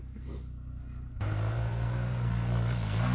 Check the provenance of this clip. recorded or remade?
remade